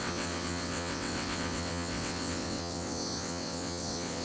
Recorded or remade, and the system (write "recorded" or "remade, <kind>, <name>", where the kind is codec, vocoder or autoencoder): remade, vocoder, WaveNeXt